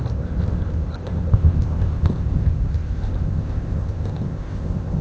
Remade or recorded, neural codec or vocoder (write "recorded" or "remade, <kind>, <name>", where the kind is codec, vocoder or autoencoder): remade, codec, ZipCodec